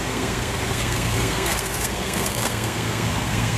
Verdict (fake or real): fake